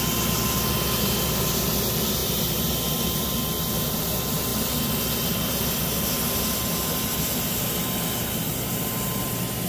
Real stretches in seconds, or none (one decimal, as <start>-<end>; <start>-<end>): 0.0-2.2; 3.3-9.7